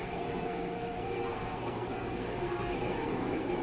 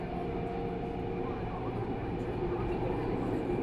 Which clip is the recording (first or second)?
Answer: second